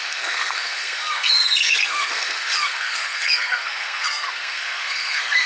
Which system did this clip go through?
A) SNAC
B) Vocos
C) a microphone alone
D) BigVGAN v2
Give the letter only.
A